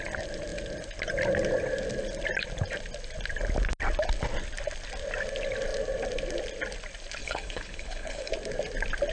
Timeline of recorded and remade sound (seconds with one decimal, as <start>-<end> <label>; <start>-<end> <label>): 0.0-7.2 recorded; 7.2-8.3 remade; 8.3-9.1 recorded